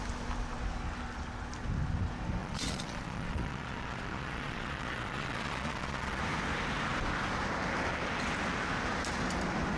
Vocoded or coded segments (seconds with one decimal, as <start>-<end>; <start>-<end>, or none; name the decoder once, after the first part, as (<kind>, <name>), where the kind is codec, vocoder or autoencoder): 2.4-6.2 (vocoder, Vocos)